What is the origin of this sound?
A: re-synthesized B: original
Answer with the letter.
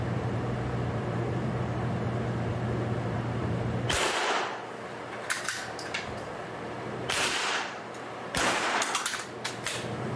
A